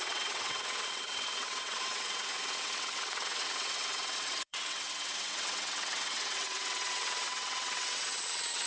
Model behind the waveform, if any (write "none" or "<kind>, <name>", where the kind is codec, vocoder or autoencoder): vocoder, WaveNeXt